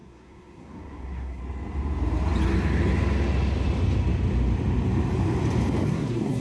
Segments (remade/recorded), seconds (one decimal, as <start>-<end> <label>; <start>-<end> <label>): 0.0-1.4 remade; 1.4-5.9 recorded; 5.9-6.4 remade